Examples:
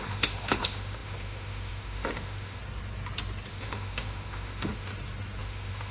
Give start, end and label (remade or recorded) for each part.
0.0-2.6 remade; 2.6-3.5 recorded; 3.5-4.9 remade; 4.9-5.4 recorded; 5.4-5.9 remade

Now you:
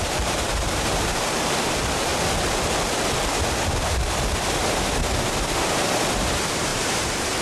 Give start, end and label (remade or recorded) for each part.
0.0-2.1 remade; 2.1-6.1 recorded; 6.1-7.4 remade